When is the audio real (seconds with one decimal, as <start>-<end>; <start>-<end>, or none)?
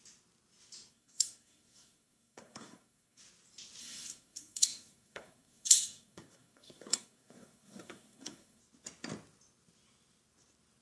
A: 0.0-0.9; 3.2-3.8; 8.6-10.8